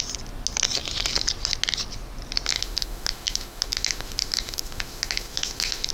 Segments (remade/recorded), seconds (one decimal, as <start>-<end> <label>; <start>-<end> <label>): 0.0-2.5 recorded; 2.5-5.9 remade